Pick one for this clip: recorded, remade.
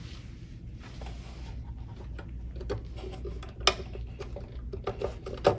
recorded